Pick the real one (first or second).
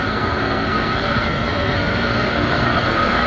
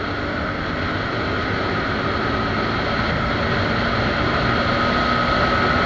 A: second